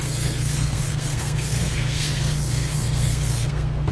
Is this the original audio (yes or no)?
no